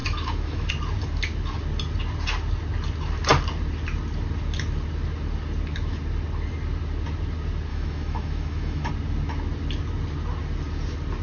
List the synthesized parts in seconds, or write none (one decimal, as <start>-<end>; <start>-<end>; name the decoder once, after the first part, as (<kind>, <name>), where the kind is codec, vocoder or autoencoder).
0.0-0.7 (autoencoder, DAC-VAE); 7.7-8.9